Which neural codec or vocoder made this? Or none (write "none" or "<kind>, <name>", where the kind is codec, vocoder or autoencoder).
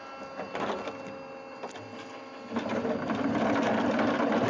none